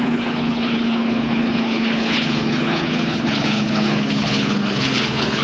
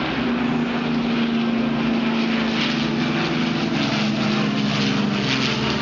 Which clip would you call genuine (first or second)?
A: second